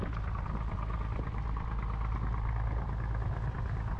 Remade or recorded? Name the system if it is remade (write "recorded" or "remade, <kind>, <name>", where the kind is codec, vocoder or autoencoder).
recorded